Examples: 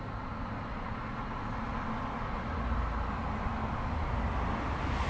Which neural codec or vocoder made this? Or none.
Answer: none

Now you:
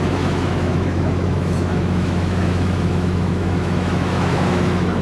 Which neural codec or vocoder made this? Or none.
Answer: autoencoder, DAC-VAE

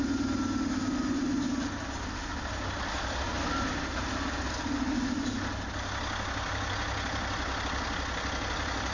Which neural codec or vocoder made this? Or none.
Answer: none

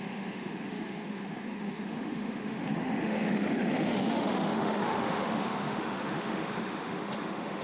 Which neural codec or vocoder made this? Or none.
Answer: autoencoder, DAC-VAE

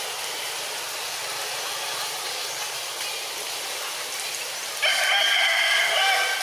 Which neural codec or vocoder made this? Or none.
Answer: none